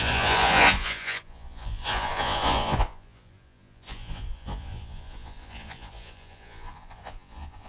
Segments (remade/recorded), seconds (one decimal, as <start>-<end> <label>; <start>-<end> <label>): 0.0-7.7 remade